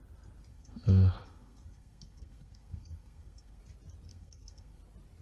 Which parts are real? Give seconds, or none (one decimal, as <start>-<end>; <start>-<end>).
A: 0.0-0.5; 3.6-4.1; 4.8-5.2